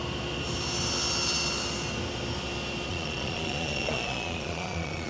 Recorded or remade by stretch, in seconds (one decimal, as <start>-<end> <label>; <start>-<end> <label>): 0.0-2.9 recorded; 2.9-5.1 remade

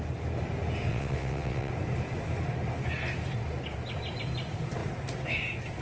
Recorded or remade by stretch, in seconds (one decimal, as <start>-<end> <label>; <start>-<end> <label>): 0.0-0.9 recorded; 0.9-1.7 remade; 1.7-5.8 recorded

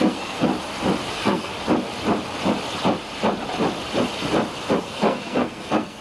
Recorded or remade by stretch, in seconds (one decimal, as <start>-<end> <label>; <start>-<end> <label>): 0.0-0.5 remade; 0.5-1.1 recorded; 1.1-1.5 remade; 1.5-4.8 recorded; 4.8-6.0 remade

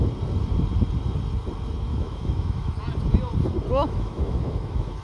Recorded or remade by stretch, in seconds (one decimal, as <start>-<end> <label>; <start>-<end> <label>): 0.0-1.9 recorded; 1.9-2.7 remade; 2.7-3.7 recorded; 3.7-5.0 remade

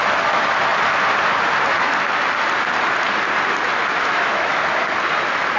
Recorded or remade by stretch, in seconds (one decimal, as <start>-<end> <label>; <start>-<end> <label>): 0.0-3.9 recorded; 3.9-4.6 remade; 4.6-5.6 recorded

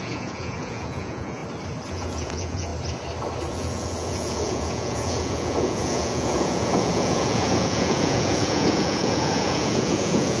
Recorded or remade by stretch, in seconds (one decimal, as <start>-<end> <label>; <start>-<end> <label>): 0.0-1.4 remade; 1.4-1.9 recorded; 1.9-2.7 remade; 2.7-3.5 recorded; 3.5-10.4 remade